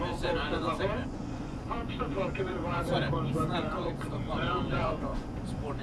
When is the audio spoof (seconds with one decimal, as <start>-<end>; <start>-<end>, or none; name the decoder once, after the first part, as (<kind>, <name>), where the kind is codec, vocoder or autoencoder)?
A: 0.0-5.8 (vocoder, Vocos)